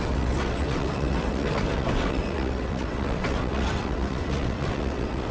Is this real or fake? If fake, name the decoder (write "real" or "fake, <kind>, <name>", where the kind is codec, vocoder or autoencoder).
fake, vocoder, WaveNeXt